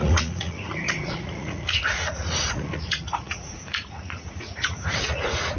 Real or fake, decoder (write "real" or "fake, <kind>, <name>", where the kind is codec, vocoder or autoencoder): fake, vocoder, Vocos